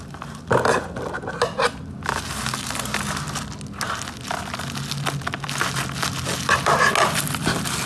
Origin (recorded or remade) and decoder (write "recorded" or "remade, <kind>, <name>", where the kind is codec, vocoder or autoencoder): recorded